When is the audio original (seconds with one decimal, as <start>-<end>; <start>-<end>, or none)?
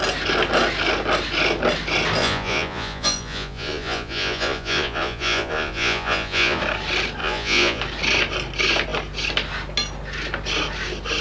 0.0-2.2; 6.6-7.2; 7.8-11.2